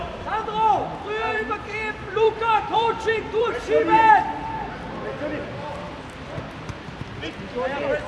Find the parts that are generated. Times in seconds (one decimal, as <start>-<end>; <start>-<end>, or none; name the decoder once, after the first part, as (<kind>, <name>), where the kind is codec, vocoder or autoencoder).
1.3-4.1 (vocoder, BigVGAN v2)